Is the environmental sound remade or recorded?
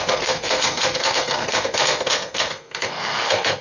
remade